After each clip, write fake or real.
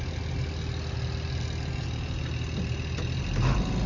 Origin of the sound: real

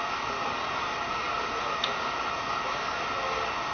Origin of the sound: real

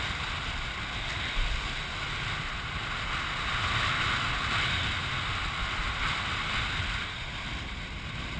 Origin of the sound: real